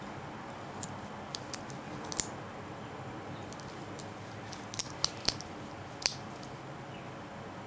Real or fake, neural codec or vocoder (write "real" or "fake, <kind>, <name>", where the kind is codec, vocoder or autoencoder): real